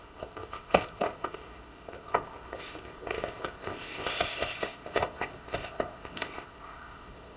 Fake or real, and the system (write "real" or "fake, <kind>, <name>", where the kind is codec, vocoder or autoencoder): fake, codec, ZipCodec